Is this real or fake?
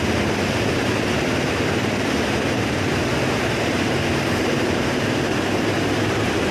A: fake